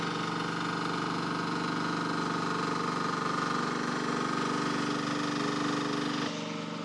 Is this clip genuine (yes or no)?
yes